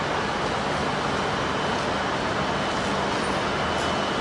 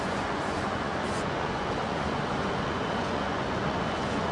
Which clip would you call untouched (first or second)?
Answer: first